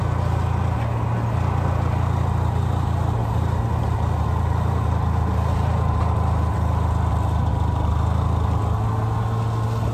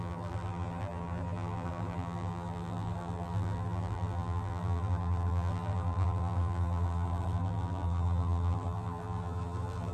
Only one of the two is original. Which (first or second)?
first